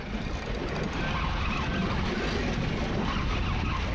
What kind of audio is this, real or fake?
real